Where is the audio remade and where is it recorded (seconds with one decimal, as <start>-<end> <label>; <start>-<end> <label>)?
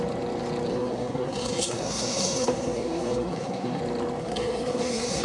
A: 0.0-0.7 recorded; 0.7-3.8 remade; 3.8-4.2 recorded; 4.2-5.2 remade